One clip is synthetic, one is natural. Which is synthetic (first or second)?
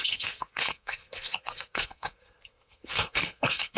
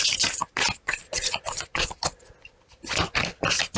first